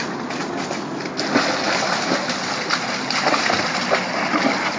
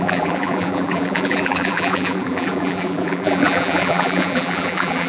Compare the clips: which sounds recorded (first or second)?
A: first